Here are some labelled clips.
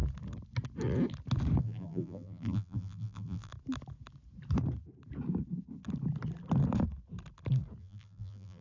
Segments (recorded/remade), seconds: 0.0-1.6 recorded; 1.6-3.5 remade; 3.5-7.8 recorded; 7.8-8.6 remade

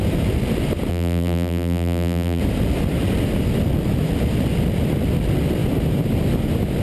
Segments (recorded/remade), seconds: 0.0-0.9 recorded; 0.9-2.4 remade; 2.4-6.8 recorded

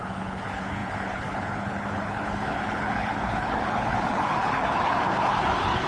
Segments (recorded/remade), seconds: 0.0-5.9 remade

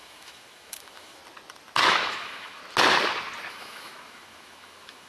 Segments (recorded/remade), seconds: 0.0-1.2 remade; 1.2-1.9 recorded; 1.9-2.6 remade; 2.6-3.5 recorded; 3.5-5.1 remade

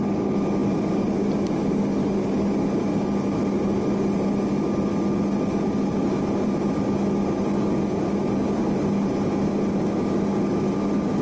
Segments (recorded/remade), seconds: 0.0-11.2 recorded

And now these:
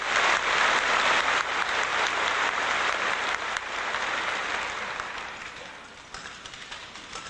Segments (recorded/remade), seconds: 0.0-7.3 recorded